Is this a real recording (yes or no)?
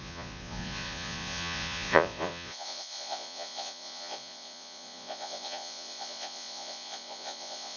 no